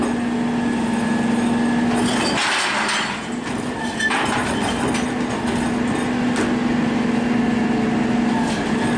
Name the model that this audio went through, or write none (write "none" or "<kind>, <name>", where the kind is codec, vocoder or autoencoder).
none